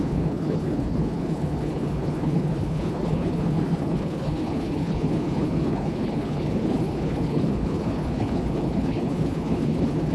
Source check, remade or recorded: remade